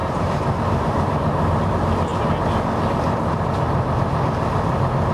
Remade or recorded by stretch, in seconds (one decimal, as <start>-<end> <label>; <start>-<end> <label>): 0.0-1.7 remade; 1.7-5.1 recorded